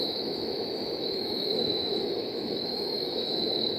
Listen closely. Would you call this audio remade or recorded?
remade